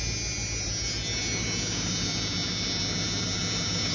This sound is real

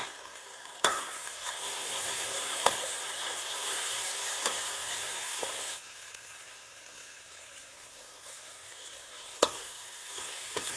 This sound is fake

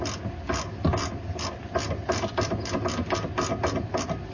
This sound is real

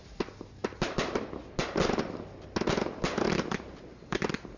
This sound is real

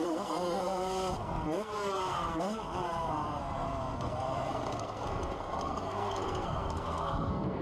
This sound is fake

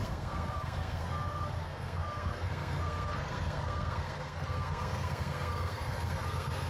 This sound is fake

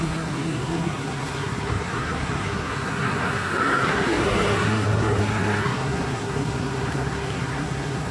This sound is fake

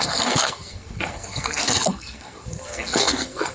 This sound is fake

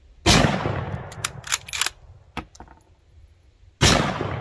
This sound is real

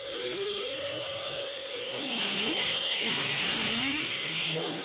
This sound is fake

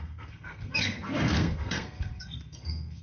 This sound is fake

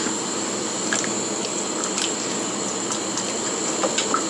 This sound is real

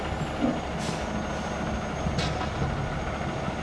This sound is real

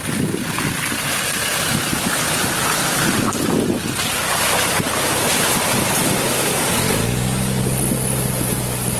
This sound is real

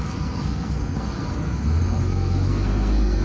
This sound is fake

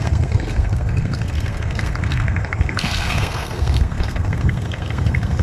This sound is fake